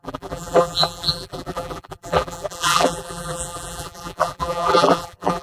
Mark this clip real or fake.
fake